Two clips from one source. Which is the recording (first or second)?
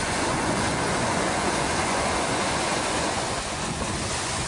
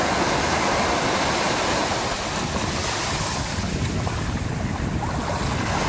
second